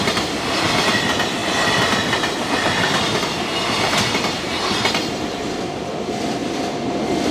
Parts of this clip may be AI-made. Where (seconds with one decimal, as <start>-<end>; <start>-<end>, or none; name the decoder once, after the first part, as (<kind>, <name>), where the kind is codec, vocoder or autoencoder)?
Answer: 1.4-3.2 (vocoder, BigVGAN v2); 6.4-7.3